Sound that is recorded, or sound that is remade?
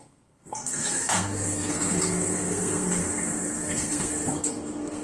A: remade